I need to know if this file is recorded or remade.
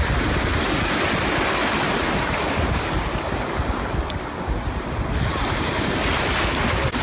recorded